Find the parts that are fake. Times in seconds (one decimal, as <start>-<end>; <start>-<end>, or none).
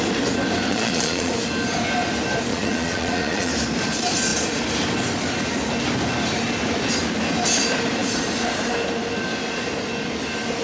0.7-1.3; 2.5-3.5